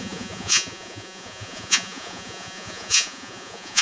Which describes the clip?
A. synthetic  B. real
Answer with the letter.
A